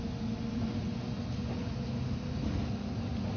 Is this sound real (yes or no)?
yes